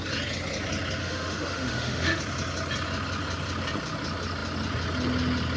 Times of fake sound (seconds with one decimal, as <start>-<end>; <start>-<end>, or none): 1.0-2.2